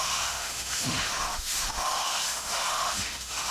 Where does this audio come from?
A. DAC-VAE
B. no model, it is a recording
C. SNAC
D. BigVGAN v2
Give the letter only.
A